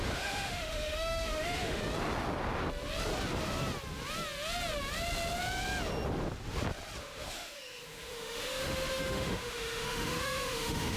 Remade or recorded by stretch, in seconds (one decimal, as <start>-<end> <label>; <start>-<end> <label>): 0.0-1.8 remade; 1.8-7.0 recorded; 7.0-11.0 remade